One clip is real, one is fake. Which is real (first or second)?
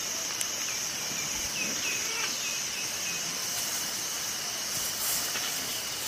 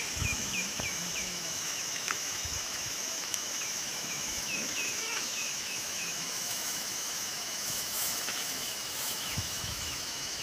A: first